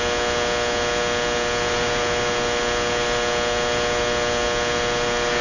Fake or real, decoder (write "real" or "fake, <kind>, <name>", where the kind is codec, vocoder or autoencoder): real